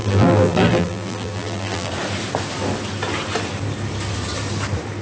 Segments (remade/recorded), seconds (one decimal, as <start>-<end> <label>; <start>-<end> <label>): 0.0-1.9 remade; 1.9-5.0 recorded